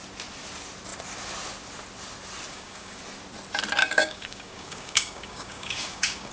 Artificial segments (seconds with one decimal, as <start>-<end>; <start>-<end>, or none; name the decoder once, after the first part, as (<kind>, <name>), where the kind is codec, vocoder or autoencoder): 2.5-3.0 (codec, DAC); 3.8-6.3